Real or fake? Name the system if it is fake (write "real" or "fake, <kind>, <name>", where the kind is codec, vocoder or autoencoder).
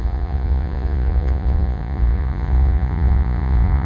fake, vocoder, Vocos